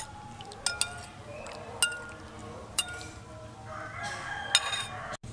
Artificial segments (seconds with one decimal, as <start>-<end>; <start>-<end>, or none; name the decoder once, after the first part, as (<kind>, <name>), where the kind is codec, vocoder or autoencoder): 1.0-1.8 (vocoder, BigVGAN v2); 2.4-3.2